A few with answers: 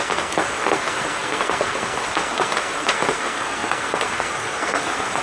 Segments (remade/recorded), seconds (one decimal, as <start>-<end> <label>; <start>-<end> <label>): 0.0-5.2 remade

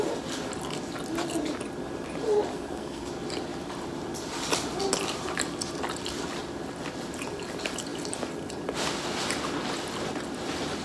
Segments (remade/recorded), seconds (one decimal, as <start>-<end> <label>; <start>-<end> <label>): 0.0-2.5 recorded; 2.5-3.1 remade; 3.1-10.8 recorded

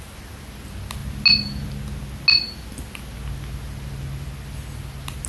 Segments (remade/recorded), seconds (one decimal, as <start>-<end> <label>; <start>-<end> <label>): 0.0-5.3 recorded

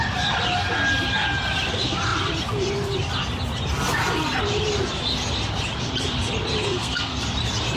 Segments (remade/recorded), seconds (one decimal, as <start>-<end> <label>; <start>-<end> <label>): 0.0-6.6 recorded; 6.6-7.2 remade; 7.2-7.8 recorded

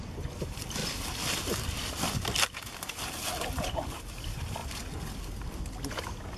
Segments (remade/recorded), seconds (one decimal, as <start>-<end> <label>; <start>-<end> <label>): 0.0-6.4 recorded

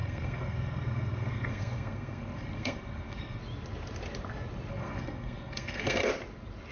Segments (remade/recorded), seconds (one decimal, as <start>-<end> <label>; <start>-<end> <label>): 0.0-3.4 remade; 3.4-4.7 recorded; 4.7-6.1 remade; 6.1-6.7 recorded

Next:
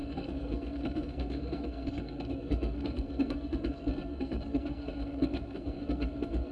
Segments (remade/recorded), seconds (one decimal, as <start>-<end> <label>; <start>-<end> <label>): 0.0-6.5 remade

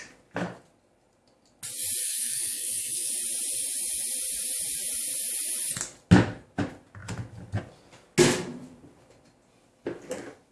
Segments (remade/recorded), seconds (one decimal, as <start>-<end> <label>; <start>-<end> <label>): 0.0-2.0 recorded; 2.0-3.1 remade; 3.1-10.5 recorded